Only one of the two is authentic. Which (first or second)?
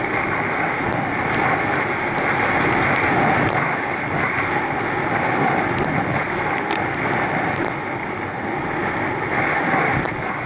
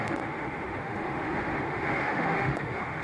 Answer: first